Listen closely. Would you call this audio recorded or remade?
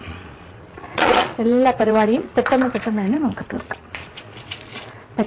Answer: remade